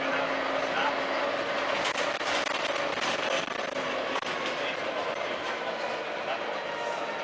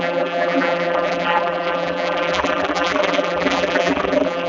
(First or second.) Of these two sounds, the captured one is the first